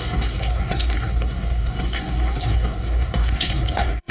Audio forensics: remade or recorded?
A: remade